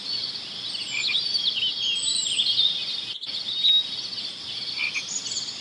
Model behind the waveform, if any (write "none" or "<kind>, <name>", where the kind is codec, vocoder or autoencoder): none